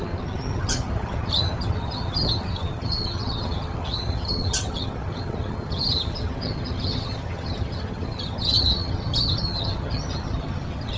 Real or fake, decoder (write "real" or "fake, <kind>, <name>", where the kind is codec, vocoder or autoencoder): fake, vocoder, HiFi-GAN